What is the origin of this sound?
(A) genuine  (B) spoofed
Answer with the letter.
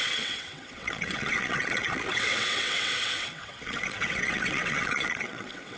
B